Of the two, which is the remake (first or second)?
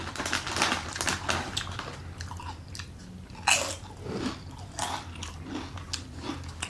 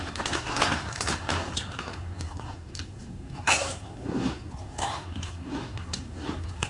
second